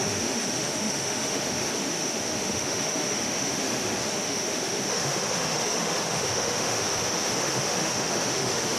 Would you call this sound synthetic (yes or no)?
yes